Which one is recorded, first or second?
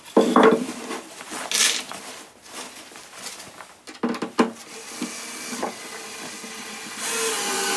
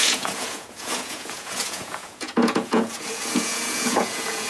first